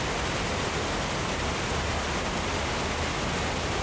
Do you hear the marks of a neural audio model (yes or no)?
no